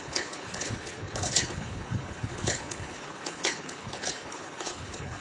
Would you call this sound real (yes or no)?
no